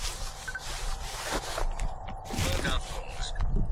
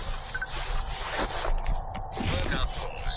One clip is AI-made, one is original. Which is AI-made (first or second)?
first